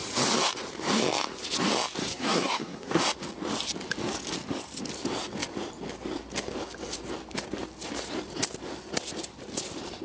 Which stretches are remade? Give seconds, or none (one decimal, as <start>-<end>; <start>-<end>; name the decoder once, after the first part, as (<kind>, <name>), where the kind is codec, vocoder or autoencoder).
2.0-3.0 (codec, SNAC)